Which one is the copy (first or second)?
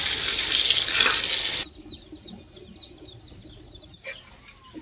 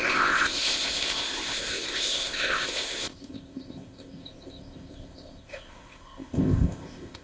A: second